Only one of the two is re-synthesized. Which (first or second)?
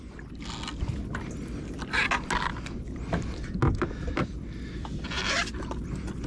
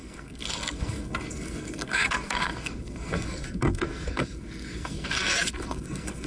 second